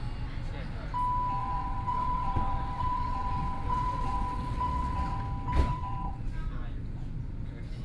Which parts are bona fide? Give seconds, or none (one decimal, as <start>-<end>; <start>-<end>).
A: 0.0-1.4; 5.2-5.7; 6.3-7.8